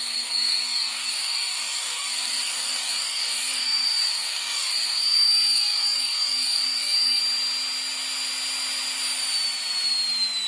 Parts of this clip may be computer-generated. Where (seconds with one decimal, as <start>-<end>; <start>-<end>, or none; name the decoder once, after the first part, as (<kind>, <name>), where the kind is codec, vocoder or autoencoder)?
0.0-7.2 (codec, DAC)